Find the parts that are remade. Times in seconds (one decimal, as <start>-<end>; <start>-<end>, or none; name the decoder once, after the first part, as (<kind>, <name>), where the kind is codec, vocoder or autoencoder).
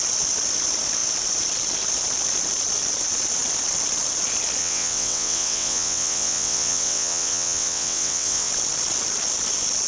4.6-8.5 (vocoder, WaveNeXt)